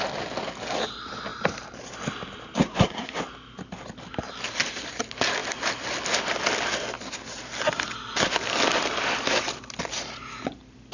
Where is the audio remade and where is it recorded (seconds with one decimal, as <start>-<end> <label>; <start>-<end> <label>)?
0.0-2.6 recorded; 2.6-3.2 remade; 3.2-10.9 recorded